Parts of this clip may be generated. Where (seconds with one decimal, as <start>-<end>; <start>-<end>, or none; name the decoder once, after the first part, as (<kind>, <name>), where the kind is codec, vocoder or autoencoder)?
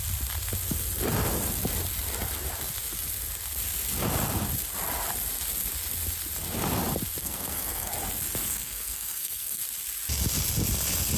7.2-7.9 (codec, SNAC); 8.4-9.6